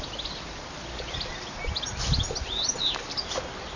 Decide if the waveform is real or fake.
real